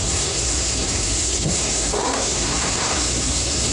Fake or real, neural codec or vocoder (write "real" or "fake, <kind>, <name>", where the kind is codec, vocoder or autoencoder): fake, codec, SNAC